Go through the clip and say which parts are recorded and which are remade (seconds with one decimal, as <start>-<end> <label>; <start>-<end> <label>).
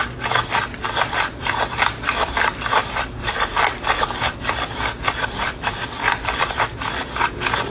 0.0-0.7 recorded; 0.7-2.4 remade; 2.4-3.2 recorded; 3.2-6.6 remade; 6.6-7.7 recorded